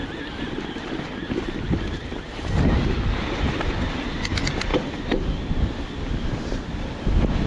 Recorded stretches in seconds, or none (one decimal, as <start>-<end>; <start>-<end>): 0.0-7.5